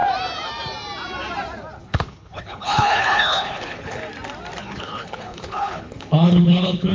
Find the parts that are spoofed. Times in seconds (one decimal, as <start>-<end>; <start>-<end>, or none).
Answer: 1.8-4.0; 4.6-6.9